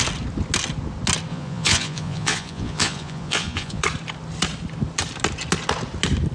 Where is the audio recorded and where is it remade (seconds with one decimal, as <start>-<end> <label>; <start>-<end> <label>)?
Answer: 0.0-1.3 recorded; 1.3-3.8 remade; 3.8-6.3 recorded